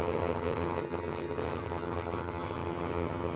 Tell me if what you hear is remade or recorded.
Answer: remade